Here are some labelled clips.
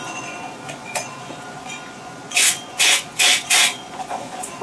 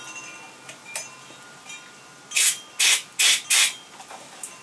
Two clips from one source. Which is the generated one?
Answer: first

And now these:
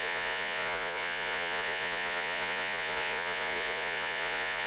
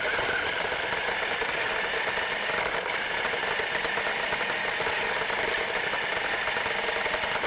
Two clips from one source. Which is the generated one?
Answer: first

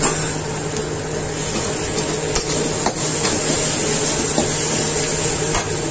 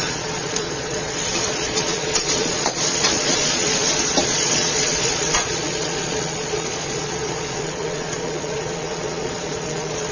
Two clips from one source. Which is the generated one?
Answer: second